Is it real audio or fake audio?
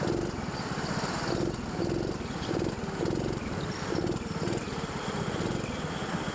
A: real